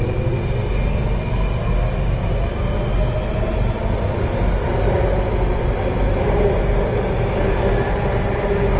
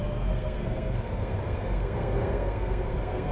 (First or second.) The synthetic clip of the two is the second